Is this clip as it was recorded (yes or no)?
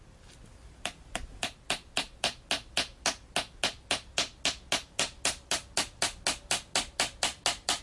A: yes